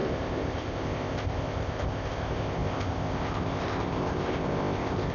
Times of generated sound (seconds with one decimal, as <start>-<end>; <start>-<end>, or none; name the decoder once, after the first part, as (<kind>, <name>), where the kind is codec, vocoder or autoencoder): 0.0-5.1 (codec, ZipCodec)